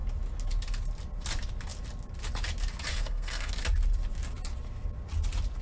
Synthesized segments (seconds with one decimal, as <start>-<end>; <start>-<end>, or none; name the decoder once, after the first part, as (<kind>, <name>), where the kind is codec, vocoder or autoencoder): 2.9-3.5 (codec, SNAC)